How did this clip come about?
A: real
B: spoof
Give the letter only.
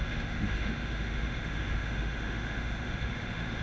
B